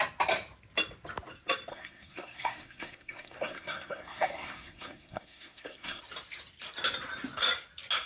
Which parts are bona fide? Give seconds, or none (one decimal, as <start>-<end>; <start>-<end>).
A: 0.0-1.7; 6.0-8.1